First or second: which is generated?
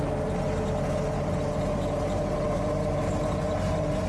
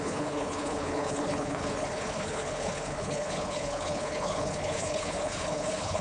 second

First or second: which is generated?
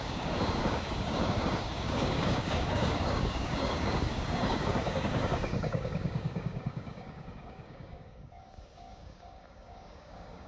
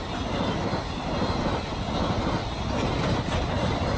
first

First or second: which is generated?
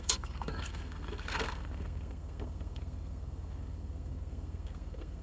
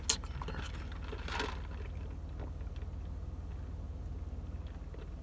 first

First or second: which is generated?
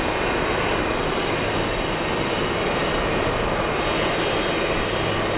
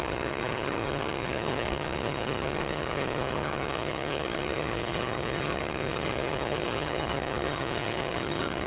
second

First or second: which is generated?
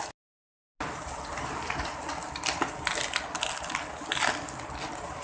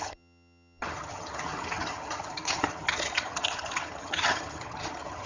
second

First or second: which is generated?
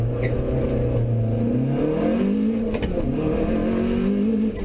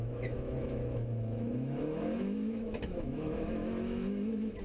second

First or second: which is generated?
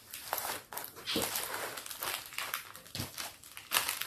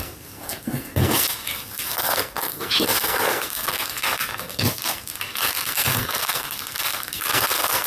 second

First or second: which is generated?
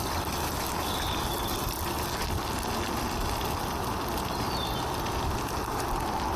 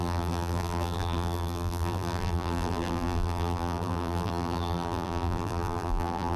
second